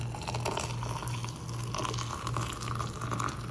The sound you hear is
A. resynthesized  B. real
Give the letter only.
B